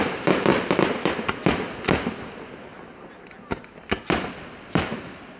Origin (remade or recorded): recorded